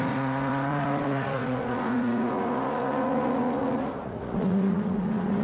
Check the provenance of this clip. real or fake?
fake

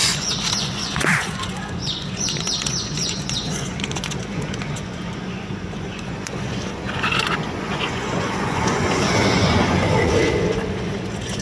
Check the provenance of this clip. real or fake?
fake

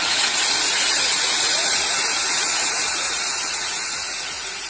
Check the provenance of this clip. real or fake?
fake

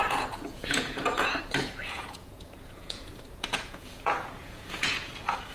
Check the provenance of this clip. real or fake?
fake